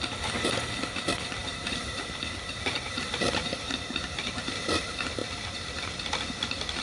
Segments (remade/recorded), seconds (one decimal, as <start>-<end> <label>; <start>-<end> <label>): 0.0-1.4 recorded; 1.4-3.8 remade; 3.8-6.8 recorded